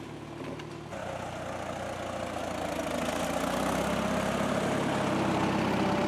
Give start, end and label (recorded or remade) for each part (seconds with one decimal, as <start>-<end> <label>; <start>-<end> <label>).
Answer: 0.0-6.1 recorded